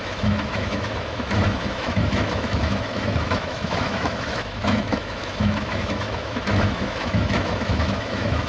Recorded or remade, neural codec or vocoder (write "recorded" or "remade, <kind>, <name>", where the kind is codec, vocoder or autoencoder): remade, autoencoder, DAC-VAE